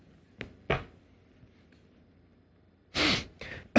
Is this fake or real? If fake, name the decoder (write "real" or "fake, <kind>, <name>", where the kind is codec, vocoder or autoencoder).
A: real